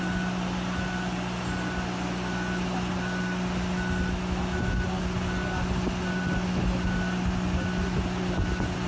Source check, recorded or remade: recorded